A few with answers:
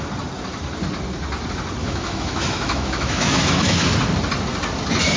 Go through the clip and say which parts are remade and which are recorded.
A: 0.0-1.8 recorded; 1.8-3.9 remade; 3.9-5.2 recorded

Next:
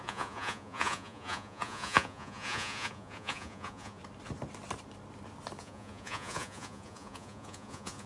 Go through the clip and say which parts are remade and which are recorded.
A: 0.0-4.0 remade; 4.0-5.6 recorded; 5.6-8.1 remade